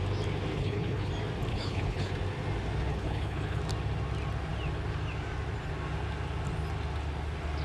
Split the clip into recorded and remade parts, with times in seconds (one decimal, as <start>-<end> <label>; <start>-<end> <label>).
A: 0.0-0.5 recorded; 0.5-1.1 remade; 1.1-1.5 recorded; 1.5-2.1 remade; 2.1-2.9 recorded; 2.9-3.6 remade; 3.6-7.6 recorded